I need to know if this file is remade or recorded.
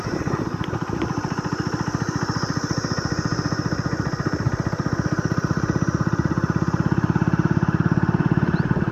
recorded